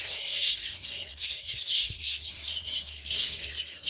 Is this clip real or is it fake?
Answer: fake